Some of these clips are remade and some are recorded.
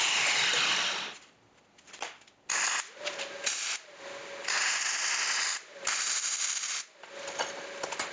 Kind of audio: recorded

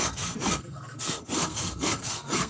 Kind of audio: remade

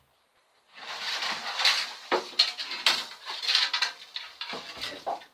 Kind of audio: recorded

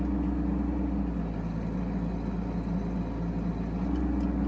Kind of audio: recorded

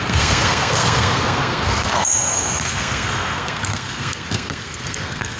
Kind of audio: remade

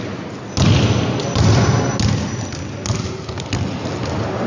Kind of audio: recorded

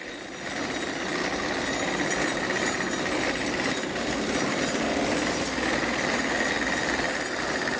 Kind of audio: recorded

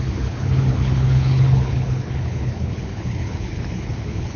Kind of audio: remade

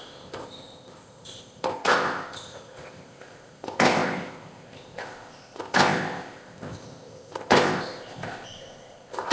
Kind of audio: remade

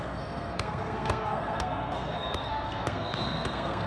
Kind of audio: remade